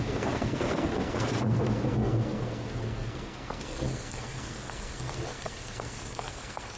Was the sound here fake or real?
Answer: fake